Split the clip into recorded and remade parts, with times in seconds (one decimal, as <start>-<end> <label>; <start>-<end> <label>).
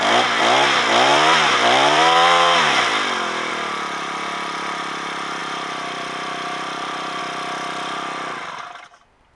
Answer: 0.0-1.1 recorded; 1.1-3.5 remade; 3.5-5.4 recorded; 5.4-7.2 remade; 7.2-9.3 recorded